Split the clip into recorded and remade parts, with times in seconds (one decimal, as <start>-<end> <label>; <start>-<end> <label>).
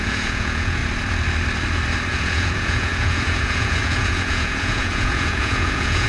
0.0-0.8 remade; 0.8-2.1 recorded; 2.1-6.1 remade